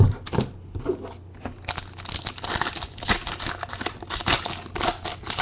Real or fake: real